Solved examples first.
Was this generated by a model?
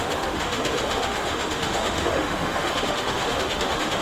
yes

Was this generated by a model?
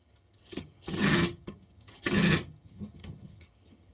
yes